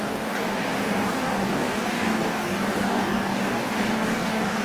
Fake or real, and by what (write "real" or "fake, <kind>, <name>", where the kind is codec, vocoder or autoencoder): fake, codec, DAC